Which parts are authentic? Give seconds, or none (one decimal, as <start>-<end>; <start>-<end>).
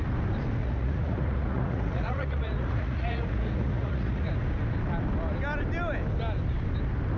0.0-0.6; 4.3-7.2